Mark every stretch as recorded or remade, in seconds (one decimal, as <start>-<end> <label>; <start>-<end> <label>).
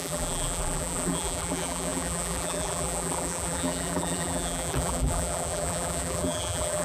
0.0-6.8 remade